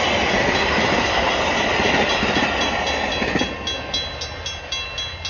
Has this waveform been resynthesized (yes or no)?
no